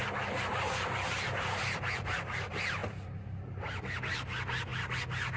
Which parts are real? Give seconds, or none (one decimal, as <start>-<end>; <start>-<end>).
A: 0.0-5.4